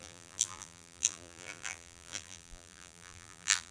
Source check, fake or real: fake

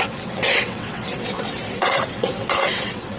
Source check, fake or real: fake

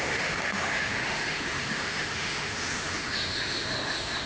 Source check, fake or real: fake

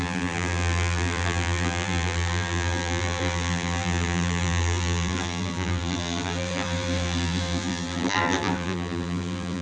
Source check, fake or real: fake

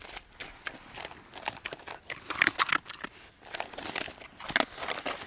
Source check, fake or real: real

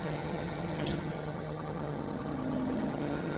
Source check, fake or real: fake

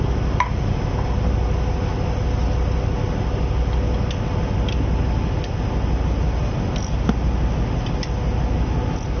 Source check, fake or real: real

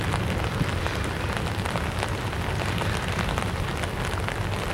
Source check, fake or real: real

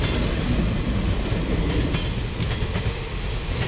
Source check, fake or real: real